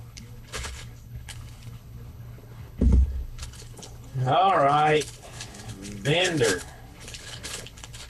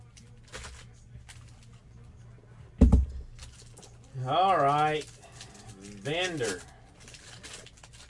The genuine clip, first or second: second